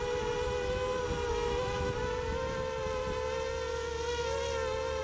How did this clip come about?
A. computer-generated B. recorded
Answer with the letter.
B